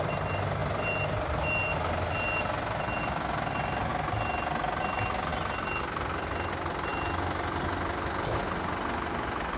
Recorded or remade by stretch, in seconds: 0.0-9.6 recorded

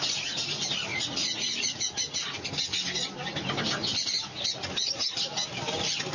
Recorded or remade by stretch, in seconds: 0.0-0.9 recorded; 0.9-2.4 remade; 2.4-6.1 recorded

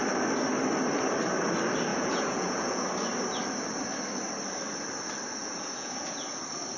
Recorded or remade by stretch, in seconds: 0.0-1.9 recorded; 1.9-2.9 remade; 2.9-5.4 recorded; 5.4-6.3 remade; 6.3-6.8 recorded